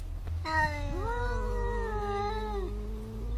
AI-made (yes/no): no